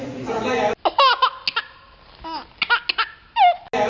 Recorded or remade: recorded